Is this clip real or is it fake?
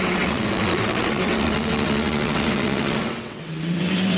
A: fake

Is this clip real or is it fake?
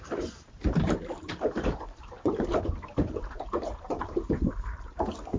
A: fake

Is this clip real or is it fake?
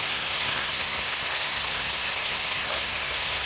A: fake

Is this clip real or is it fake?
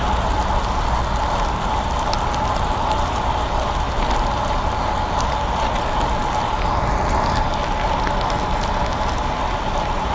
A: real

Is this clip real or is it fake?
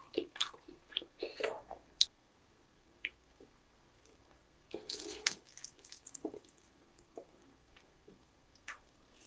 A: fake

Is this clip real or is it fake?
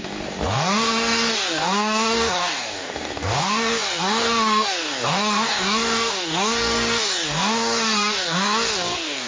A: fake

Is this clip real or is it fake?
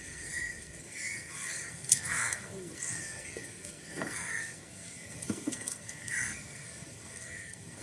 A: fake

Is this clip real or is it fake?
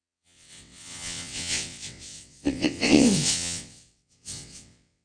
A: fake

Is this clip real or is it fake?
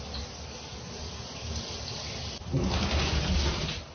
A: real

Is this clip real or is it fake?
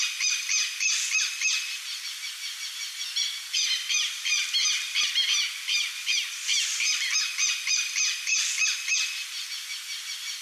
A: real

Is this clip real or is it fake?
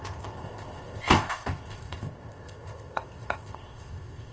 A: fake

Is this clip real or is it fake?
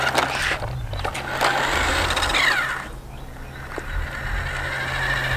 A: real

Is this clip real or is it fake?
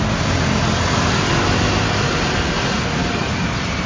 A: real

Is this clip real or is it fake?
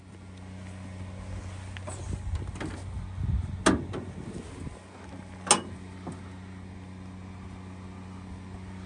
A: real